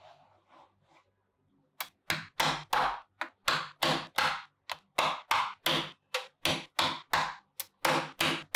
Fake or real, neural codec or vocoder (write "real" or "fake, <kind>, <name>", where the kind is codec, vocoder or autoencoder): real